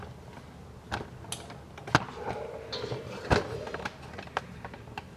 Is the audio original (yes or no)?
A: yes